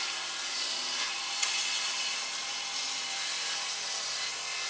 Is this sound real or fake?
fake